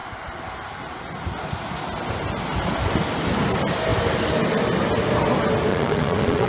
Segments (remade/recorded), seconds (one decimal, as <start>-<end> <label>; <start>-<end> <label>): 0.0-5.7 recorded; 5.7-6.5 remade